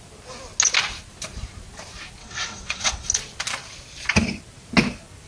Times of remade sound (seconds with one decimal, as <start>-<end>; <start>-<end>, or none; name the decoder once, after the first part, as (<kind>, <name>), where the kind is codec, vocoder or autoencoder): 2.2-3.1 (vocoder, WaveNeXt)